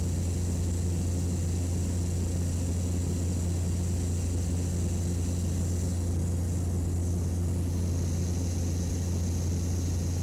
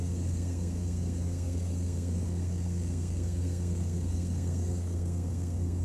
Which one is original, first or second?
first